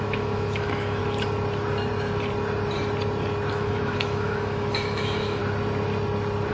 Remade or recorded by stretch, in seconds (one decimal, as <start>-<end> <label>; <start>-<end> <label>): 0.0-1.0 remade; 1.0-3.5 recorded; 3.5-5.4 remade; 5.4-6.5 recorded